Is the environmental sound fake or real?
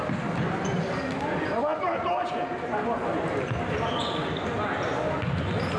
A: real